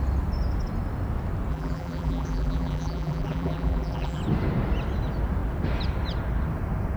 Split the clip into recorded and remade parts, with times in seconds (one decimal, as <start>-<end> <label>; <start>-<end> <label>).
0.0-1.5 recorded; 1.5-4.2 remade; 4.2-7.0 recorded